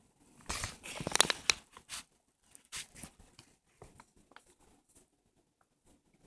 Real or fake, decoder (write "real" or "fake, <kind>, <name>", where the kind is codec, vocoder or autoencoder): real